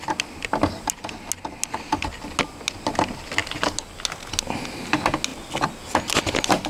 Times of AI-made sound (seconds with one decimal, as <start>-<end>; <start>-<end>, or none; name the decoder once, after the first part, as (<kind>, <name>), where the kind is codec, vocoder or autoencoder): none